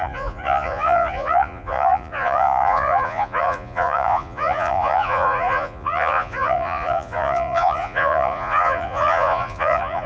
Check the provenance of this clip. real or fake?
fake